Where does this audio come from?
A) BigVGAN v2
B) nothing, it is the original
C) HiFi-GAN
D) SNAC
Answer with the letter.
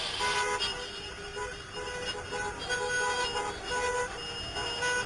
B